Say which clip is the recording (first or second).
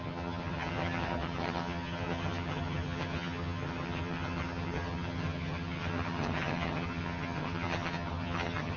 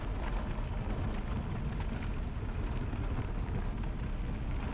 second